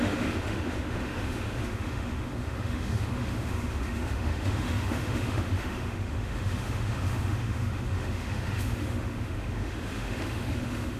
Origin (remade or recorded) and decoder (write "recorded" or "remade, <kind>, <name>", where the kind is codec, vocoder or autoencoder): remade, autoencoder, DAC-VAE